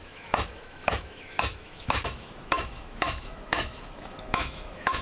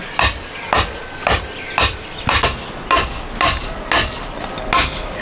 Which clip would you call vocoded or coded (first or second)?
first